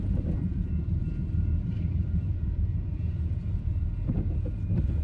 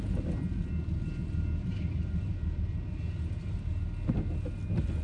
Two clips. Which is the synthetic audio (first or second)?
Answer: first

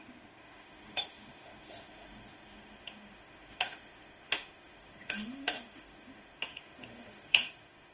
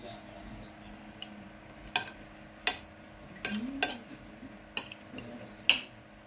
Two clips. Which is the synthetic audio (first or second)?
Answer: first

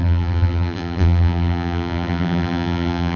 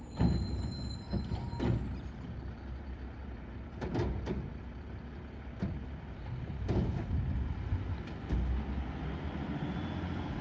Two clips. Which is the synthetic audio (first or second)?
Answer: first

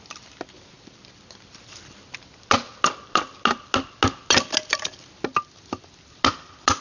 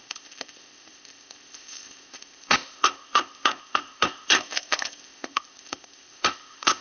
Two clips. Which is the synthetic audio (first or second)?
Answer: second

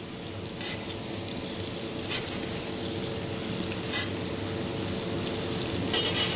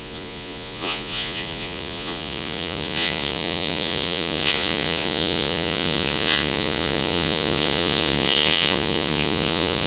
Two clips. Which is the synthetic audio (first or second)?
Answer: second